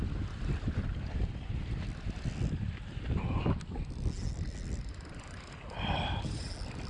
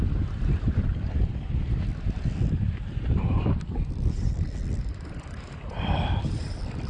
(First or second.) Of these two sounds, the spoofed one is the second